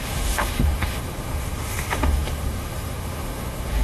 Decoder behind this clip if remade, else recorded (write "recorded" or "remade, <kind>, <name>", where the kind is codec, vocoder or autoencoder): remade, autoencoder, DAC-VAE